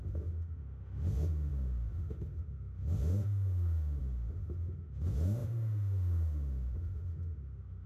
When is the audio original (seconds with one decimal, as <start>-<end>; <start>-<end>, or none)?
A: none